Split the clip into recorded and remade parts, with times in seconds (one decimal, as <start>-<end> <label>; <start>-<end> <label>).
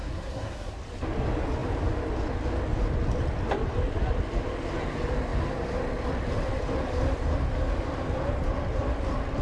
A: 0.0-0.7 remade; 0.7-9.4 recorded